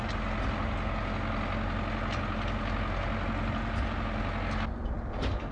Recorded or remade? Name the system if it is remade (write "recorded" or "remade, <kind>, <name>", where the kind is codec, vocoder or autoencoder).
recorded